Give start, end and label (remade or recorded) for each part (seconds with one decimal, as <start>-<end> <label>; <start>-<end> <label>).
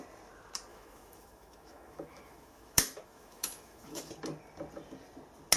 0.0-0.7 recorded; 0.7-4.1 remade; 4.1-5.6 recorded